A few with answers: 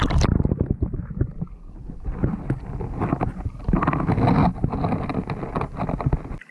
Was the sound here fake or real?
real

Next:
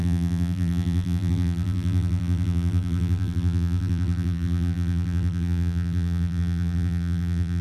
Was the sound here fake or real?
fake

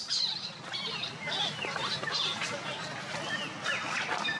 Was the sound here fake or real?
real